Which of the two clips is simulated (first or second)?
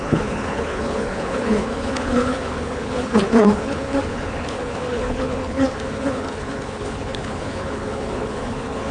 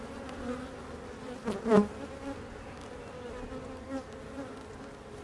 first